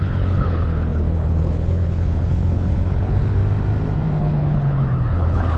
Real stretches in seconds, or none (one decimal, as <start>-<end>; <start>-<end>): 3.4-4.2